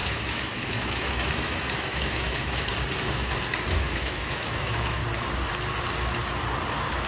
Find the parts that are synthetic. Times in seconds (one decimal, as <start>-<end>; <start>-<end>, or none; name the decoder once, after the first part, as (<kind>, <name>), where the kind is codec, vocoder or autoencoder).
0.0-2.7 (autoencoder, DAC-VAE); 3.7-5.0